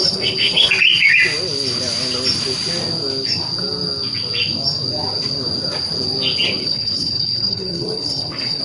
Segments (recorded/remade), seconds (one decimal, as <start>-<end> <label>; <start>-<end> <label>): 0.0-0.7 remade; 0.7-6.6 recorded; 6.6-8.6 remade